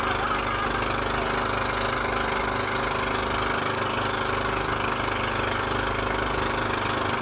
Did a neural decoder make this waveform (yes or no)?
no